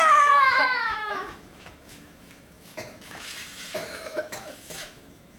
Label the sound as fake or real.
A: fake